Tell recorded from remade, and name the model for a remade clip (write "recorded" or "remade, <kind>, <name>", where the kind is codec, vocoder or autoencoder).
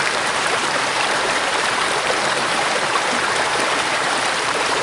remade, vocoder, BigVGAN v2